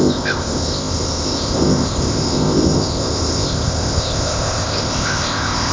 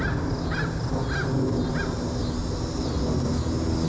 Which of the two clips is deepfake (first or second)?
first